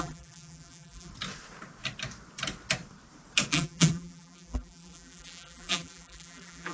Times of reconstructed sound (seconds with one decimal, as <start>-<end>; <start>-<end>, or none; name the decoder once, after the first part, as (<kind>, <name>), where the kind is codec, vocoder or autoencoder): 0.0-1.1 (vocoder, BigVGAN v2); 3.5-6.7